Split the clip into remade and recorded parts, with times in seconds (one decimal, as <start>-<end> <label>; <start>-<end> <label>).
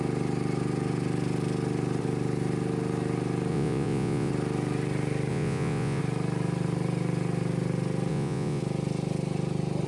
0.0-3.5 recorded; 3.5-4.3 remade; 4.3-5.3 recorded; 5.3-6.0 remade; 6.0-8.1 recorded; 8.1-8.6 remade; 8.6-9.9 recorded